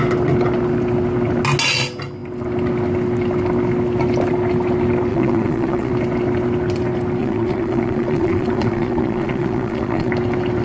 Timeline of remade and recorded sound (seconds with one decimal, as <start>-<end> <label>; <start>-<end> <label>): 0.0-5.1 recorded; 5.1-5.9 remade; 5.9-7.2 recorded; 7.2-10.1 remade; 10.1-10.6 recorded